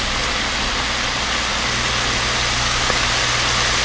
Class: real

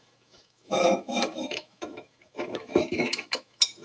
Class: fake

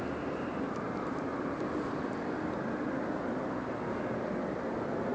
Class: real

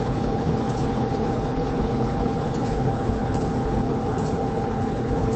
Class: fake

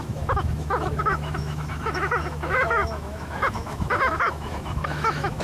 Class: fake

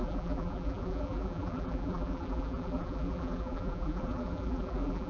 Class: fake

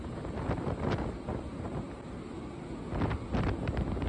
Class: real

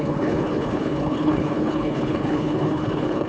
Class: fake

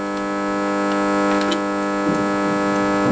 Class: real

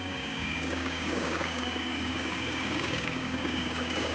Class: fake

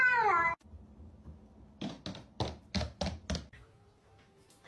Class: real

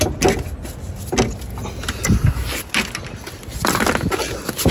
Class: real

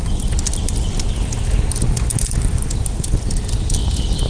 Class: real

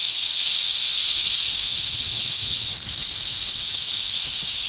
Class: fake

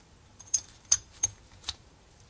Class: fake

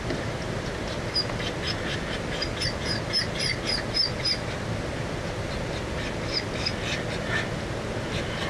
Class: real